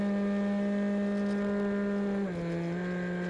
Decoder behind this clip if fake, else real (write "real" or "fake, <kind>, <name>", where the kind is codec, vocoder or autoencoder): real